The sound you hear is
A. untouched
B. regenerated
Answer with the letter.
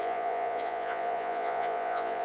B